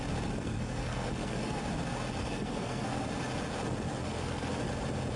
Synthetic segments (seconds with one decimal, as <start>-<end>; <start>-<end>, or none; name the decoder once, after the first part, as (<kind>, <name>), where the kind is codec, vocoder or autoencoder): 0.4-1.6 (codec, SNAC); 2.2-3.1; 3.9-4.6